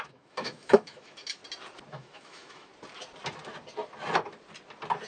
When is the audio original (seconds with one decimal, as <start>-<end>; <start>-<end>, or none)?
1.4-1.9; 2.7-5.1